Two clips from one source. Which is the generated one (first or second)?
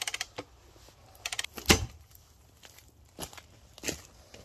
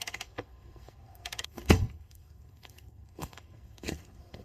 second